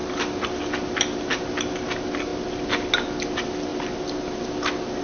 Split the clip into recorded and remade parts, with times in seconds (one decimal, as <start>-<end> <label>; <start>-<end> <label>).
0.0-5.0 recorded